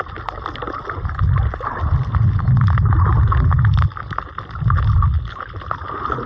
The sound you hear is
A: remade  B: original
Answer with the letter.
B